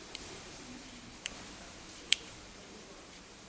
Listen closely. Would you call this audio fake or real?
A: fake